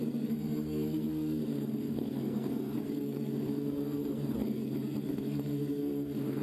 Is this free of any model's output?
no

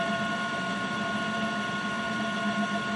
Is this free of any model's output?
yes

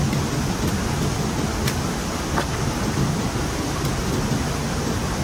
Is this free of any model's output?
yes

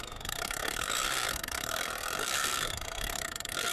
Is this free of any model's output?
no